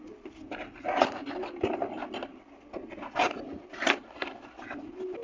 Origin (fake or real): real